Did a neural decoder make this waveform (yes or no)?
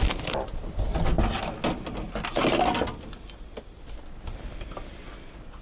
no